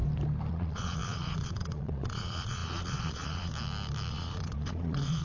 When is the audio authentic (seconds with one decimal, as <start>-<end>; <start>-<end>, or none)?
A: 0.0-0.5; 3.5-4.1